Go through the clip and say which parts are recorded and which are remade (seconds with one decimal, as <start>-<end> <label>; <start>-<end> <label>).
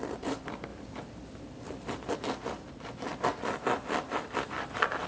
0.0-5.1 recorded